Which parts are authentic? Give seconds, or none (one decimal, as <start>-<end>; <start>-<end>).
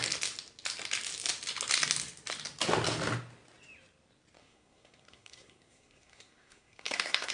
0.0-4.4